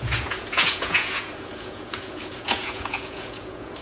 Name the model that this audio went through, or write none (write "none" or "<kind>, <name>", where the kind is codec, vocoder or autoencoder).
vocoder, Vocos